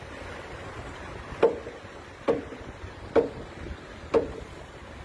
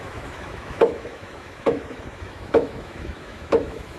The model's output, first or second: second